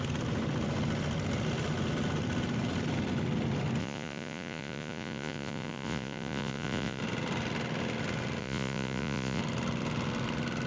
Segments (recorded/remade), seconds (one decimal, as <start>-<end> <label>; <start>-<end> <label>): 0.0-3.8 recorded; 3.8-7.0 remade; 7.0-8.4 recorded; 8.4-9.4 remade; 9.4-10.7 recorded

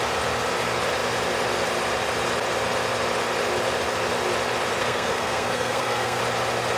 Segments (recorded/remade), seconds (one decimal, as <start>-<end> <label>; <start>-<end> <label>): 0.0-4.8 recorded; 4.8-6.2 remade; 6.2-6.8 recorded

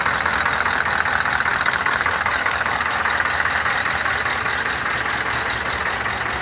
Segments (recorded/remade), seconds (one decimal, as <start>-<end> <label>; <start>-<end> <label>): 0.0-1.5 recorded; 1.5-3.0 remade; 3.0-6.4 recorded

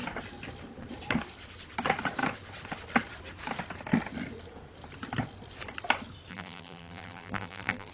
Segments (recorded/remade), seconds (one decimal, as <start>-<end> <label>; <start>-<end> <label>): 0.0-6.3 recorded; 6.3-7.9 remade